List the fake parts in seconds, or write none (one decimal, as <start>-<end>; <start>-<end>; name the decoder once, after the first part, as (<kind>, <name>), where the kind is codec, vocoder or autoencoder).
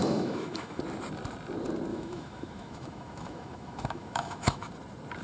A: 0.0-0.8 (autoencoder, DAC-VAE); 1.9-4.7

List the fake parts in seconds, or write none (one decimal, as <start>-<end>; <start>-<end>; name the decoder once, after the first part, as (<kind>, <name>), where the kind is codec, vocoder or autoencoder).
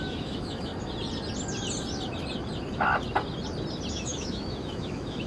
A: 0.0-0.7 (autoencoder, DAC-VAE); 3.9-5.3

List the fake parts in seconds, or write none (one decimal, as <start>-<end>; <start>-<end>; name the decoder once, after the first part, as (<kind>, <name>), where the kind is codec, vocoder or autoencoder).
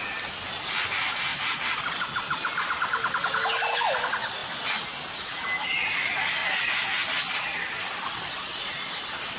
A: none